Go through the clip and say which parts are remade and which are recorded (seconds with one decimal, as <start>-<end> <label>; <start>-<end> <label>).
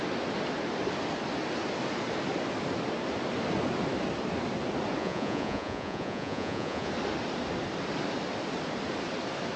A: 0.0-5.0 recorded; 5.0-6.9 remade; 6.9-9.6 recorded